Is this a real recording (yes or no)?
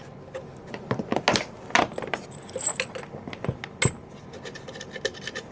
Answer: yes